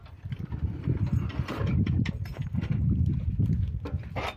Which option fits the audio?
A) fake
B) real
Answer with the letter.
A